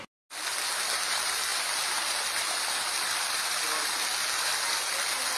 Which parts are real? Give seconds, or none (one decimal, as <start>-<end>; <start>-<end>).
0.0-5.4